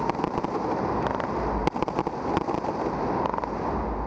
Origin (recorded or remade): recorded